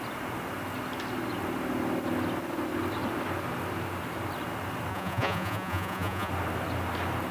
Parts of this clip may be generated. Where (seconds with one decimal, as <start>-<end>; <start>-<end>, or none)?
4.9-6.3